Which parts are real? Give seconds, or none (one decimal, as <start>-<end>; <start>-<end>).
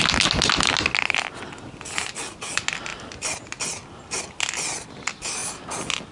0.0-6.1